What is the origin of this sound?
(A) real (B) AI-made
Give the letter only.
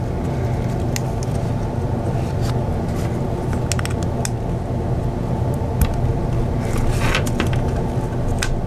A